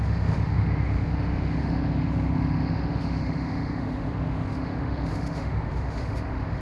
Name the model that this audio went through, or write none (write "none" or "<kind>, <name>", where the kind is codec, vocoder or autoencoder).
autoencoder, DAC-VAE